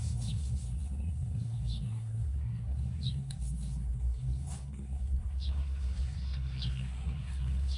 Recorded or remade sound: remade